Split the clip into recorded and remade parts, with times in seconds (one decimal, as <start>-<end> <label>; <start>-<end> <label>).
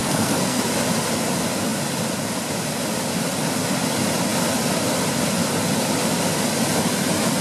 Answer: 0.0-0.6 remade; 0.6-7.4 recorded